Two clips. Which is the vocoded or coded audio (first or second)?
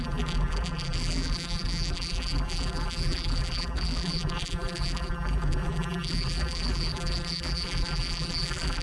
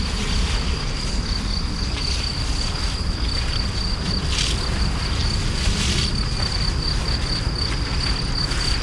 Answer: first